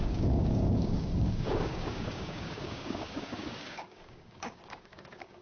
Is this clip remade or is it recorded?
remade